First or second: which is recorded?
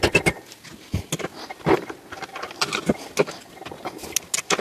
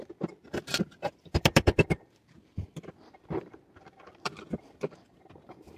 first